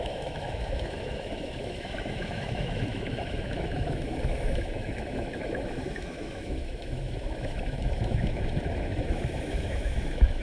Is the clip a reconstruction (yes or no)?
yes